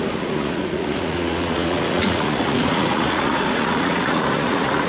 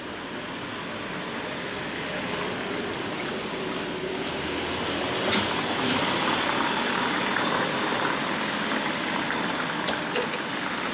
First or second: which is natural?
second